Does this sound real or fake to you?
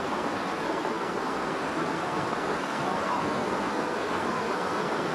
fake